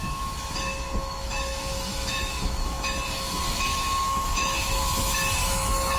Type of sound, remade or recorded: remade